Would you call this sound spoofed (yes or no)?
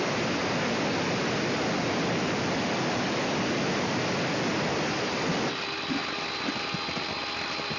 no